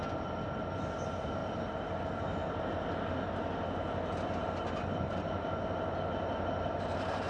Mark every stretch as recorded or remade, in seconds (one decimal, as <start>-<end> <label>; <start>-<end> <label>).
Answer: 0.0-7.3 recorded